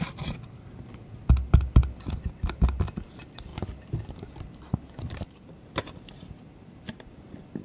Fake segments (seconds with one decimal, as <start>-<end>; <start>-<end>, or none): 0.0-3.5; 6.4-7.6